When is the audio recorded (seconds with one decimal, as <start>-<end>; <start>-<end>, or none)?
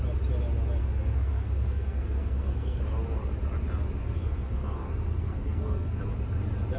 0.0-0.8; 2.8-4.0; 6.0-6.8